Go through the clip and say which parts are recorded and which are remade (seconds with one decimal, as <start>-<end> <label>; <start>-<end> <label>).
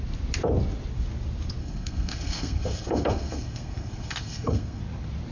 0.0-1.6 recorded; 1.6-4.8 remade; 4.8-5.3 recorded